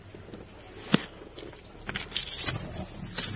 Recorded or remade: recorded